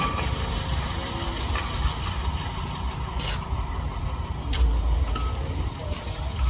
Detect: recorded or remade recorded